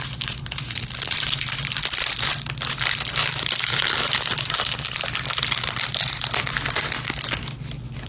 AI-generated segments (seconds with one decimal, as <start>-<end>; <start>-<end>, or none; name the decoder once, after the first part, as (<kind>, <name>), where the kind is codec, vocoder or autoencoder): none